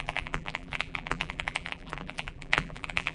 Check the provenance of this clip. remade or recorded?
remade